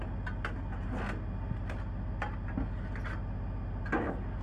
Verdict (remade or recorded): recorded